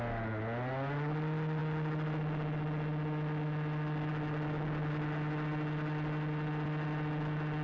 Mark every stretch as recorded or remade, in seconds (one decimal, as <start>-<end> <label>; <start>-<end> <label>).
0.0-7.6 recorded